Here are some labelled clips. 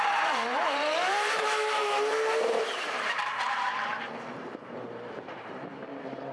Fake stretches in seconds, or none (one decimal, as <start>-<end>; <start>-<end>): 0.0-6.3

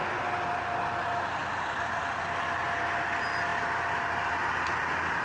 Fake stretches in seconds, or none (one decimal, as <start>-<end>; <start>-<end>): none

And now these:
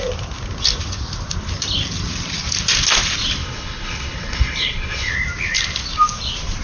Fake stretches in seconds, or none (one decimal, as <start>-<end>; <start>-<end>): 3.4-5.1